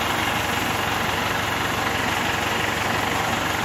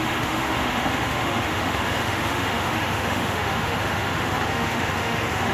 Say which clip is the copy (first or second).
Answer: second